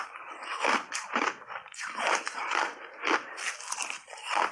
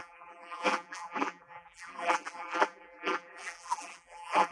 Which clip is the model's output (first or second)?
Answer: second